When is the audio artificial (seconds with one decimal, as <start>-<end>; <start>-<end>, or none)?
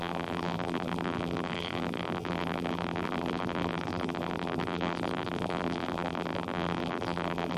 0.0-7.6